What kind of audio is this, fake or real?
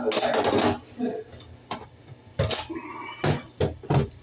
real